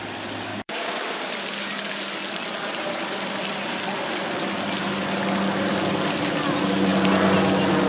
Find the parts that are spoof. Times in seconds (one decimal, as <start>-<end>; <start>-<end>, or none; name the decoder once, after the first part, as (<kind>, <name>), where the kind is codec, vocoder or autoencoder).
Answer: 0.5-1.3 (codec, DAC)